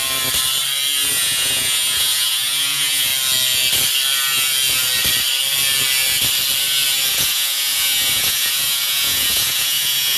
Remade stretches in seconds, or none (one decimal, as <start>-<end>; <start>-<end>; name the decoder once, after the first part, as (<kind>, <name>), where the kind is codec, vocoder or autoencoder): 1.1-3.1 (vocoder, Vocos); 7.1-10.2